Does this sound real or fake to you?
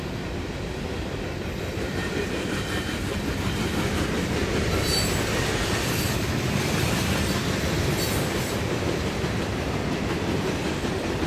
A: real